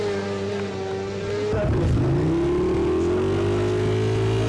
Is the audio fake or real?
real